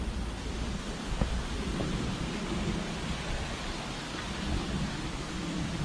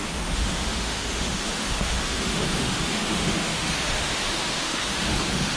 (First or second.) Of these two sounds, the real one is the first